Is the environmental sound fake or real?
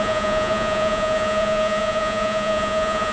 fake